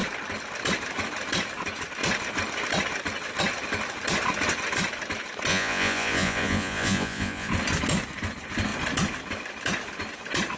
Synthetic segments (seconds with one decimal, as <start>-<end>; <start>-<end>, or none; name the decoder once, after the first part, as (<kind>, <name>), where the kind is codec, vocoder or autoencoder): 5.5-7.5 (vocoder, Vocos)